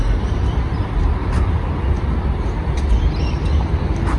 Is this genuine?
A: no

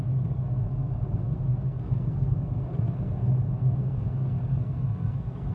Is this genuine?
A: no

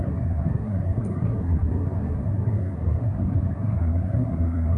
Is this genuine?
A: no